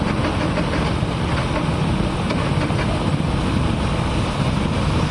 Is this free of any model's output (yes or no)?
yes